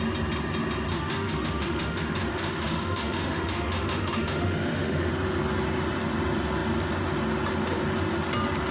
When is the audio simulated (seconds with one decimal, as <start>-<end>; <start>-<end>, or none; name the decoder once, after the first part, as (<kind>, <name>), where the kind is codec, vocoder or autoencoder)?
0.9-5.1 (autoencoder, DAC-VAE)